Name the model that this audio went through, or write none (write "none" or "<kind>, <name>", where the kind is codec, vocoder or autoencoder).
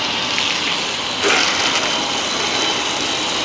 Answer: none